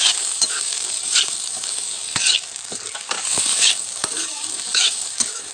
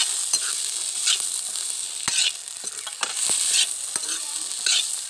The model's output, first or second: first